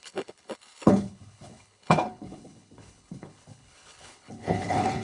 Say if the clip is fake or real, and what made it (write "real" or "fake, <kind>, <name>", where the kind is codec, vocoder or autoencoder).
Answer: fake, codec, HILCodec